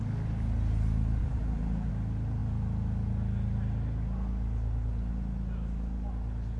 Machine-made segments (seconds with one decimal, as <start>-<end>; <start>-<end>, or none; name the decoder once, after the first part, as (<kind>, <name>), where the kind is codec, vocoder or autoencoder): 1.2-1.9 (vocoder, BigVGAN v2)